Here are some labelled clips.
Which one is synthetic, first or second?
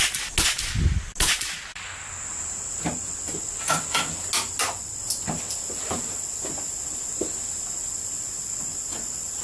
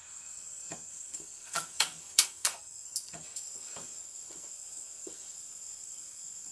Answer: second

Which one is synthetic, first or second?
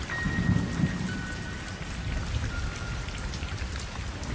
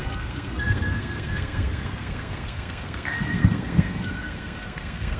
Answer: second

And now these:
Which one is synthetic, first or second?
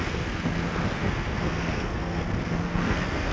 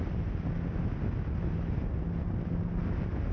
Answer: first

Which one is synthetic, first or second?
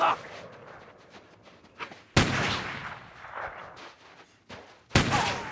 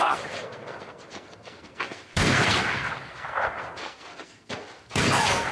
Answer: second